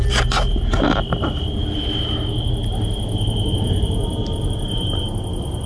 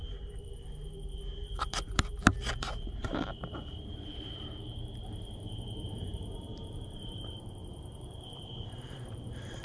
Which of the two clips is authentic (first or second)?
first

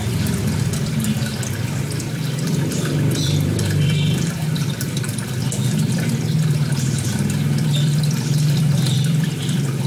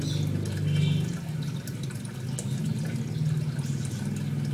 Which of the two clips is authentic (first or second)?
second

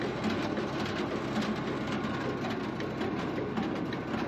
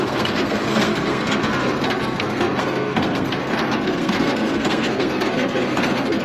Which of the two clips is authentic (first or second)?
first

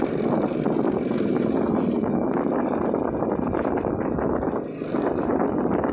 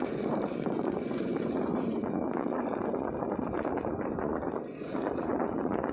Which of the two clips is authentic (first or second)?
first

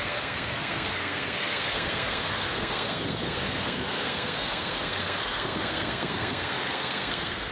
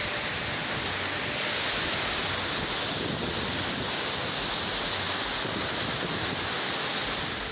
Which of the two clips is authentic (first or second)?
second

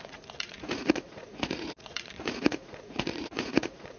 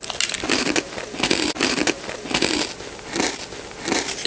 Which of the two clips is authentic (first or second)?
second